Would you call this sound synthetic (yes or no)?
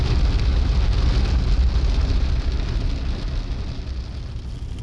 no